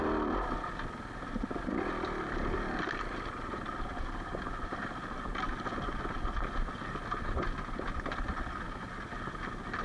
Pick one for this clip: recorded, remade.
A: recorded